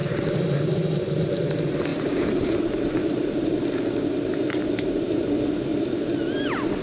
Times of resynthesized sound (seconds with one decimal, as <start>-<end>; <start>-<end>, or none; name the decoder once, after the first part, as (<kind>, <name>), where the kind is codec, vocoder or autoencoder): 0.0-1.3 (vocoder, BigVGAN v2); 1.9-3.5; 4.6-5.3